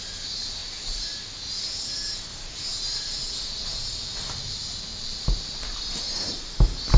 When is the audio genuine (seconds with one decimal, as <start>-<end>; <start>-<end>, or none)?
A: 0.0-7.0